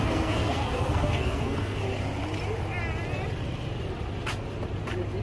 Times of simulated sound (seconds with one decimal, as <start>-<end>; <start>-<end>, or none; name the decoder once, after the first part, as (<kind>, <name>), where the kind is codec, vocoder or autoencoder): 0.0-1.8 (codec, SNAC)